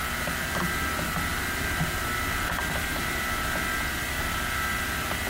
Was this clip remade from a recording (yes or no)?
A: no